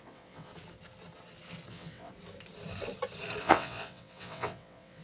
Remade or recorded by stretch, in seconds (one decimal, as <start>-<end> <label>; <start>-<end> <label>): 0.0-0.5 remade; 0.5-1.7 recorded; 1.7-2.1 remade; 2.1-3.4 recorded; 3.4-5.0 remade